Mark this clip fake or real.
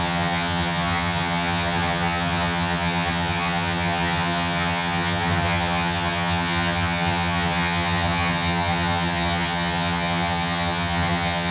fake